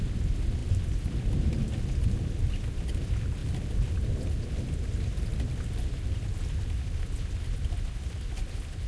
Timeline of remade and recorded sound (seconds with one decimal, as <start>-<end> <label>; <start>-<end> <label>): 0.0-8.9 recorded